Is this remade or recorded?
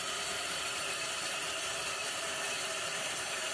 remade